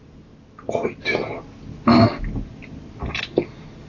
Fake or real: real